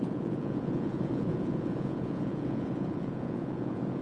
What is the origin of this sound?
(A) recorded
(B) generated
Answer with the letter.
B